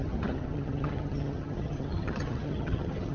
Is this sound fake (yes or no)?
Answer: yes